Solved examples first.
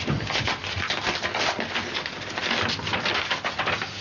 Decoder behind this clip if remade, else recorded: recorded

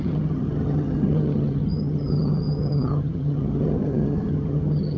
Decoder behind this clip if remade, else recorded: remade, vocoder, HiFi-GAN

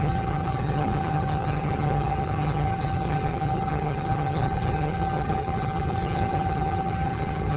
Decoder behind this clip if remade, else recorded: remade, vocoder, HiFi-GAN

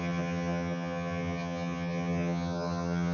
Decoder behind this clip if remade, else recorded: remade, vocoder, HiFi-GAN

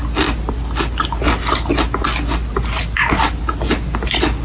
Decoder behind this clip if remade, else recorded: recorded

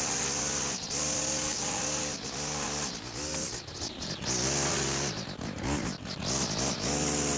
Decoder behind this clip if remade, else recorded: recorded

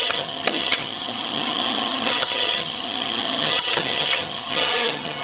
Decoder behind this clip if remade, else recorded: remade, vocoder, HiFi-GAN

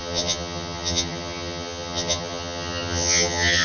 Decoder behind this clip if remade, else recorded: remade, vocoder, HiFi-GAN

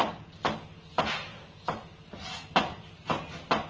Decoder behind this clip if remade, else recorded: recorded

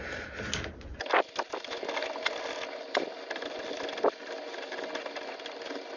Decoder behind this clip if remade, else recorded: recorded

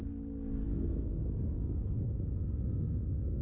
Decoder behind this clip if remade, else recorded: recorded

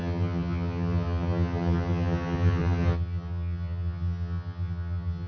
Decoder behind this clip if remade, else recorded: remade, vocoder, HiFi-GAN